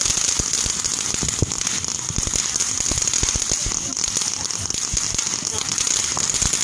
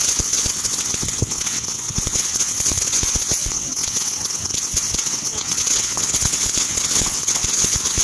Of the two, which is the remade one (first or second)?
second